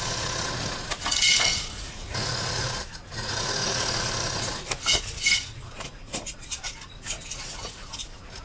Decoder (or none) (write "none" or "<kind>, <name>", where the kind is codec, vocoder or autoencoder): vocoder, Vocos